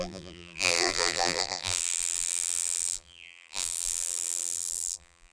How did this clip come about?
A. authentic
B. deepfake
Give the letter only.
B